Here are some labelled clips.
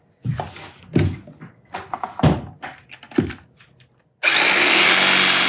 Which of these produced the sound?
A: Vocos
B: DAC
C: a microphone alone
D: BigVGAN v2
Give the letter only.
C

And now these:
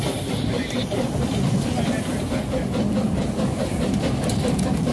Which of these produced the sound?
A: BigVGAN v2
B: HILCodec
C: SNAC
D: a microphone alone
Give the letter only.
A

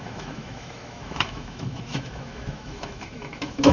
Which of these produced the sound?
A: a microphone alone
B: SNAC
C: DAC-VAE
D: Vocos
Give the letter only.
C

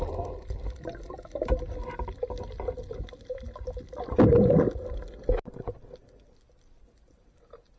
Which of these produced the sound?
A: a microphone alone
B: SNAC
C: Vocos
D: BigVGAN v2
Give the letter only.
A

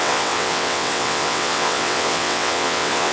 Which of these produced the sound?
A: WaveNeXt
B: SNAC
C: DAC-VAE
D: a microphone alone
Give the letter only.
A